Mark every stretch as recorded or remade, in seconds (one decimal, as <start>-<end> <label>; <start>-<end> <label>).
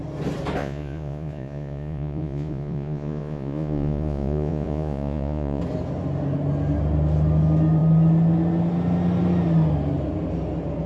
0.0-0.6 recorded; 0.6-5.6 remade; 5.6-10.9 recorded